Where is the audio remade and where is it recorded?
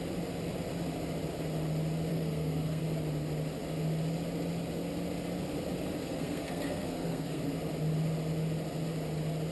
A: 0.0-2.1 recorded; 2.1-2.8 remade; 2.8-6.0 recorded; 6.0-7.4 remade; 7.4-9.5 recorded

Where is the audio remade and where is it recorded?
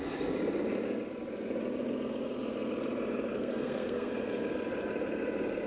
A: 0.0-3.3 recorded; 3.3-4.1 remade; 4.1-5.7 recorded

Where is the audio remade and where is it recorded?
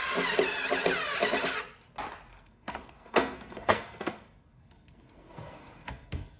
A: 0.0-2.3 recorded; 2.3-6.4 remade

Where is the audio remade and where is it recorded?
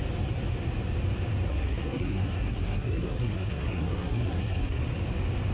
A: 0.0-1.5 recorded; 1.5-4.8 remade; 4.8-5.5 recorded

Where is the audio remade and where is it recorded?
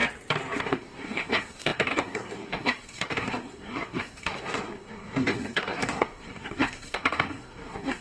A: 0.0-0.6 recorded; 0.6-8.0 remade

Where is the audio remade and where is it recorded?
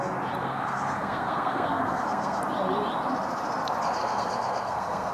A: 0.0-0.4 recorded; 0.4-2.4 remade; 2.4-4.0 recorded; 4.0-5.1 remade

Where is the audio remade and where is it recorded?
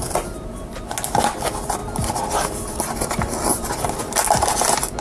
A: 0.0-5.0 recorded